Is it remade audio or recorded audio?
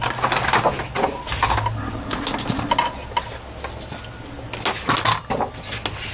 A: recorded